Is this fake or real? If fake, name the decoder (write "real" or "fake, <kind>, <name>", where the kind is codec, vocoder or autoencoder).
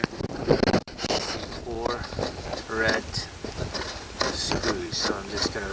real